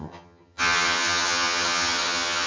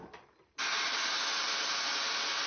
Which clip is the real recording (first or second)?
second